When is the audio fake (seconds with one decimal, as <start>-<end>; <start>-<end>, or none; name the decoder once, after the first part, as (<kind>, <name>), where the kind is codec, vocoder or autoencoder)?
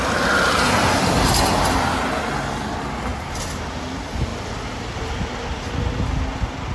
none